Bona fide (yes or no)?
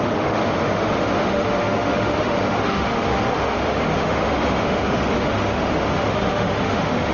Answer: no